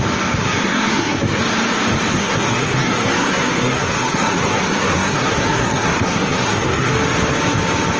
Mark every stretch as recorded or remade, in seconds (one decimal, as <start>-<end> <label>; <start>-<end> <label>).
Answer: 0.0-0.4 recorded; 0.4-1.4 remade; 1.4-2.1 recorded; 2.1-6.9 remade; 6.9-8.0 recorded